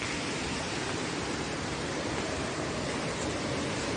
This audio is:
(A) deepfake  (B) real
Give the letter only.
B